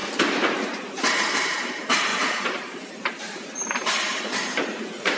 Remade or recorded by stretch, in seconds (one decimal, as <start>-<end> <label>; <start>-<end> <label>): 0.0-5.2 remade